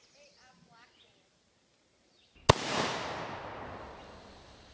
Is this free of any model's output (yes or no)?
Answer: yes